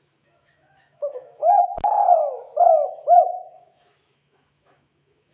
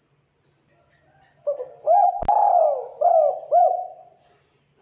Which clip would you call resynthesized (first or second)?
first